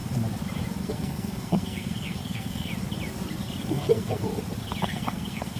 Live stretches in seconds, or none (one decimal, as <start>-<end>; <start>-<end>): 0.0-0.8; 2.7-3.7; 4.3-4.8